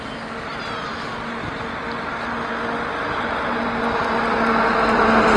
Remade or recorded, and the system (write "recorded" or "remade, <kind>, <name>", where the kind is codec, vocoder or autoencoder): recorded